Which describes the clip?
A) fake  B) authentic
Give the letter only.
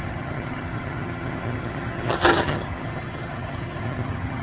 A